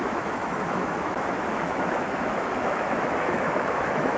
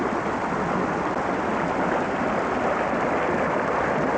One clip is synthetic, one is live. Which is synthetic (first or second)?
first